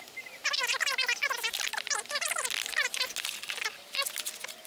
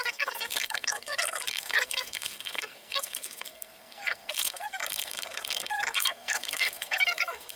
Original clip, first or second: first